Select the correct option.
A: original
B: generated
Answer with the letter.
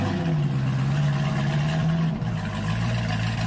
A